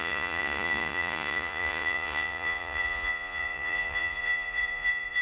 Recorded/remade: remade